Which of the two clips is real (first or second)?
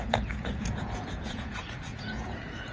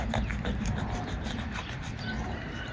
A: second